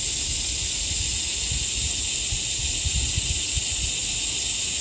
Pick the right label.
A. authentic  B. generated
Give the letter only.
A